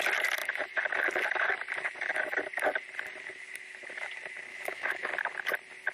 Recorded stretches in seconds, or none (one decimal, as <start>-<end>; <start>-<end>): 0.0-4.5; 5.1-5.9